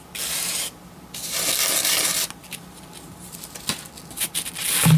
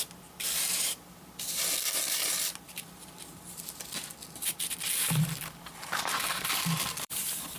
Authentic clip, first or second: first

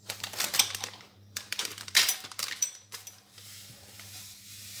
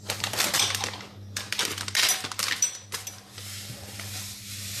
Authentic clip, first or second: second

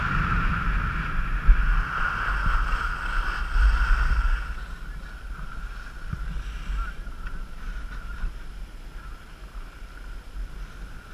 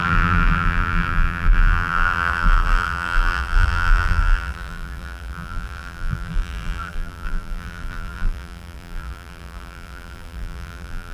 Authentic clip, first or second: first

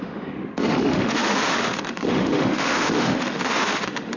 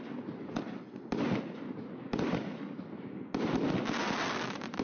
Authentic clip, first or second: second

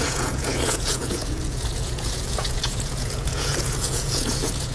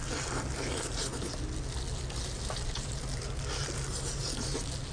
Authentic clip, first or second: second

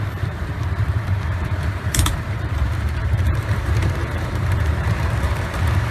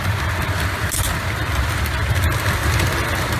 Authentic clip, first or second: second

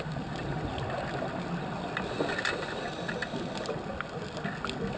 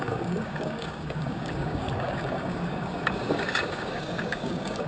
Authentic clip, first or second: first